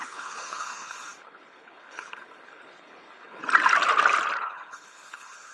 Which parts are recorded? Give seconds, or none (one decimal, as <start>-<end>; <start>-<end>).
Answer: 3.4-4.4